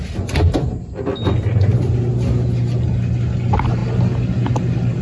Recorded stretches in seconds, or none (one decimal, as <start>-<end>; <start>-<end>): 0.0-5.0